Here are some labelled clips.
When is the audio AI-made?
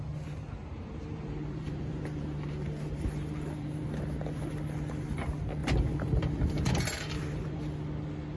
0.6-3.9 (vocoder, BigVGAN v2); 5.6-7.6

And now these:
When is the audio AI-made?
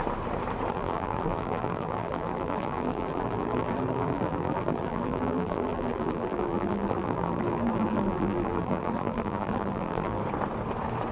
0.7-10.2 (vocoder, BigVGAN v2)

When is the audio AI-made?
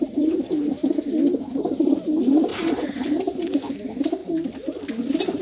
0.0-0.8 (vocoder, BigVGAN v2); 1.6-4.2; 4.9-5.4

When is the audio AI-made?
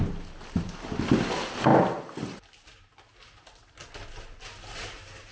none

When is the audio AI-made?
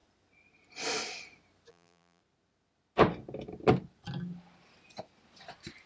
1.7-2.2 (vocoder, BigVGAN v2)